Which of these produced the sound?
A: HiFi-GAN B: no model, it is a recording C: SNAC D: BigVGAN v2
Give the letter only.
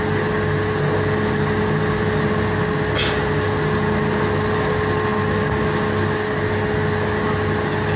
B